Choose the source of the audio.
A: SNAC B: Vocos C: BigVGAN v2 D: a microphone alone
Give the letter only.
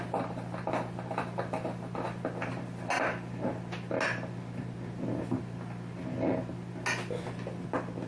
D